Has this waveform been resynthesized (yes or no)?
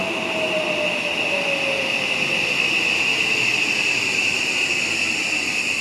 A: no